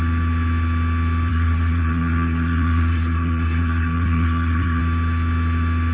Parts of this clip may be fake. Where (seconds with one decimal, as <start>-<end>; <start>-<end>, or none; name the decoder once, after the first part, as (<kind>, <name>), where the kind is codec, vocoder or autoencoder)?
1.3-4.8 (codec, SNAC)